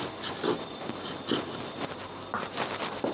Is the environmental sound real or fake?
real